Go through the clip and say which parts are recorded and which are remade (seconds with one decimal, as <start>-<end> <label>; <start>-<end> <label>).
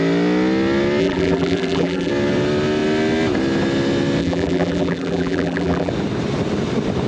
0.0-1.0 recorded; 1.0-2.1 remade; 2.1-4.2 recorded; 4.2-5.9 remade; 5.9-7.1 recorded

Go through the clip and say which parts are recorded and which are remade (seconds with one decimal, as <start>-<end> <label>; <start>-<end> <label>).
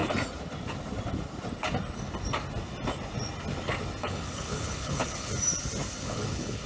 0.0-4.0 recorded; 4.0-5.3 remade; 5.3-6.0 recorded; 6.0-6.7 remade